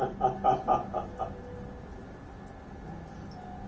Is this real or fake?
real